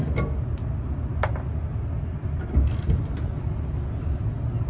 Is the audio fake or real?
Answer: real